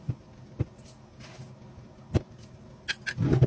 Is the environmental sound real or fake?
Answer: real